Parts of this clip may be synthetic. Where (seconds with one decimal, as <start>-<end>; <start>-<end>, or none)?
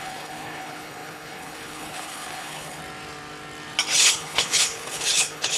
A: 0.0-2.8; 4.0-5.6